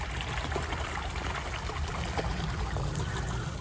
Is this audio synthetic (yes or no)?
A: no